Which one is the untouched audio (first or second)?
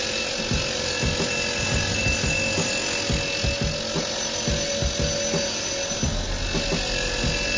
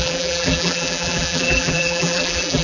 first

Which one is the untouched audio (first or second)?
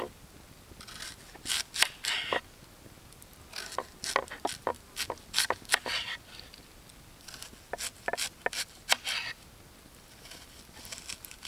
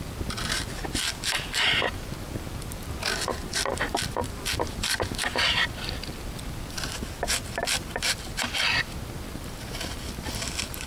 first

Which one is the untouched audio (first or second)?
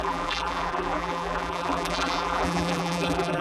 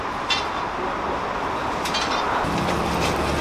second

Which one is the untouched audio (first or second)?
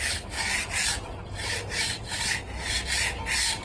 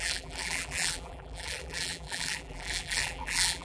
first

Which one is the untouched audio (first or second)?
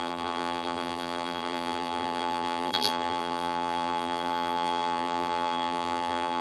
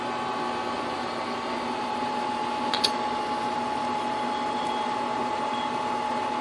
second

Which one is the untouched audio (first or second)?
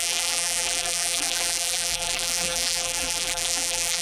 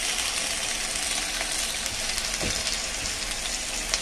second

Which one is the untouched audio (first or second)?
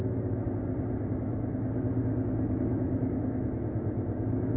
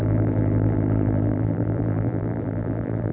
first